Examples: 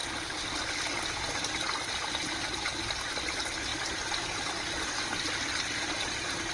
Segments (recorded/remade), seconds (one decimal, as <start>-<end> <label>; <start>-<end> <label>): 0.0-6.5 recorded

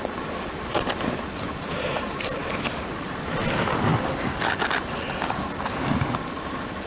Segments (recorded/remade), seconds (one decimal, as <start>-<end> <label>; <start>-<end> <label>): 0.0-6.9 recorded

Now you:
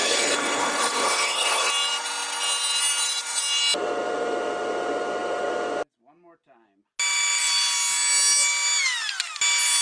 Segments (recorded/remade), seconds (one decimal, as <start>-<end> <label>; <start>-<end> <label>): 0.0-1.7 remade; 1.7-9.8 recorded

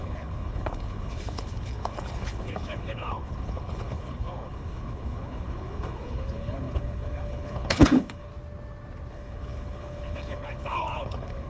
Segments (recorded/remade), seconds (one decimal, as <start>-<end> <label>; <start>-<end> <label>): 0.0-8.3 remade; 8.3-9.1 recorded; 9.1-11.5 remade